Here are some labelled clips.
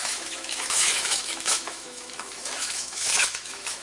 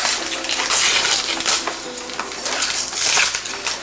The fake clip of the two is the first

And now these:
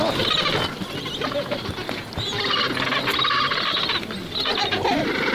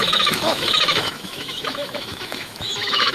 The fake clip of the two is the second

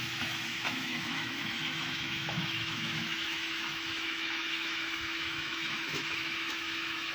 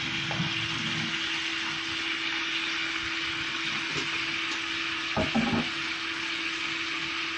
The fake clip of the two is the first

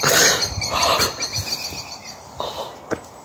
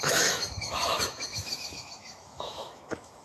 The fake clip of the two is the second